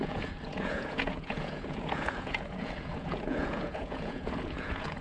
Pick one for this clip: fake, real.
fake